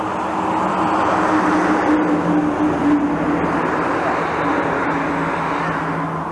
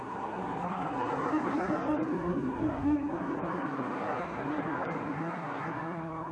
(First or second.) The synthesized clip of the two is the second